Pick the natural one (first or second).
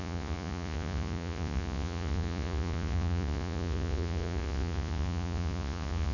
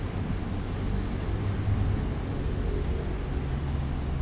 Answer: second